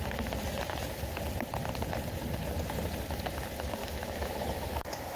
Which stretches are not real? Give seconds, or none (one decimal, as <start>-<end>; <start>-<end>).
0.7-1.2; 3.8-5.2